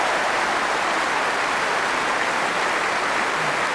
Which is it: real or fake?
real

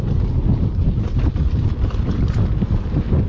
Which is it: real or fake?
fake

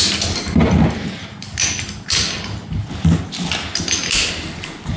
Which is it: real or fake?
real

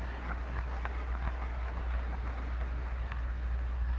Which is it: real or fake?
fake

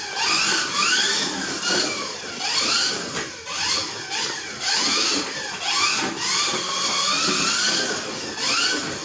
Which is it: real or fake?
real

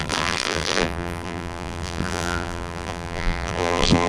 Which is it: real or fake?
fake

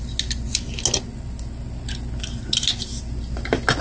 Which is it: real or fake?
real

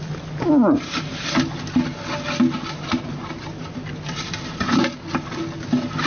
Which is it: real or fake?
real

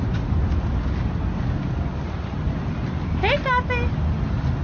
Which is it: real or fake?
real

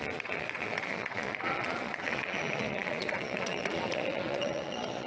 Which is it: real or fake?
fake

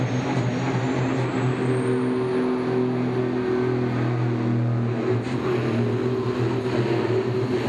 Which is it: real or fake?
real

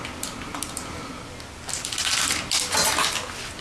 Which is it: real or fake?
real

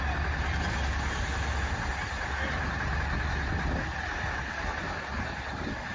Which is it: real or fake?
real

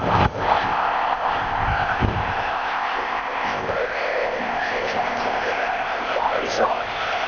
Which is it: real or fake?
fake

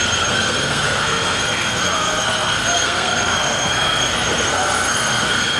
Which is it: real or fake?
fake